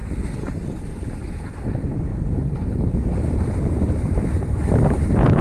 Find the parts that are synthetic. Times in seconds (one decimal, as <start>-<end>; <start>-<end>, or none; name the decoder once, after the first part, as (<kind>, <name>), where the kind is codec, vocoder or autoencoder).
0.0-0.5 (vocoder, BigVGAN v2); 2.1-5.4